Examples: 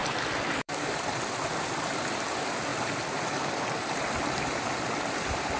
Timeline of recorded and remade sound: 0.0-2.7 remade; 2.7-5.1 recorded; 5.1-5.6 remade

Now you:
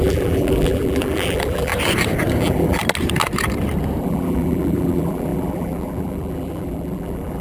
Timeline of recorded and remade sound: 0.0-1.7 remade; 1.7-2.4 recorded; 2.4-2.8 remade; 2.8-4.0 recorded; 4.0-7.4 remade

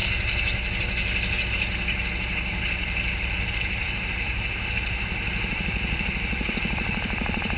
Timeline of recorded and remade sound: 0.0-2.8 recorded; 2.8-7.6 remade

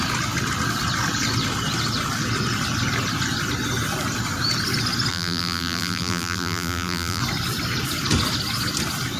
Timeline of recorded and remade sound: 0.0-5.1 recorded; 5.1-7.2 remade; 7.2-9.2 recorded

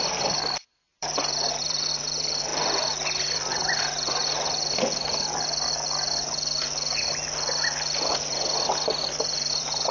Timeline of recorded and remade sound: 0.0-2.5 remade; 2.5-3.2 recorded; 3.2-4.2 remade; 4.2-8.3 recorded; 8.3-9.9 remade

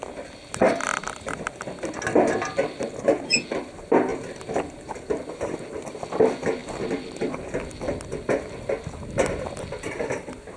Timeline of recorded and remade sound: 0.0-0.6 recorded; 0.6-2.6 remade; 2.6-4.1 recorded; 4.1-5.2 remade; 5.2-6.6 recorded; 6.6-7.3 remade; 7.3-10.6 recorded